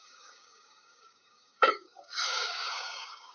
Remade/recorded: remade